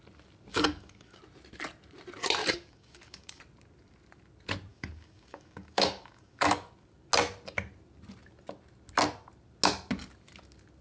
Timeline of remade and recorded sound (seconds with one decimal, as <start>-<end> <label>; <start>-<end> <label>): 0.0-0.5 recorded; 0.5-1.2 remade; 1.2-2.4 recorded; 2.4-3.4 remade; 3.4-4.7 recorded; 4.7-6.7 remade; 6.7-10.8 recorded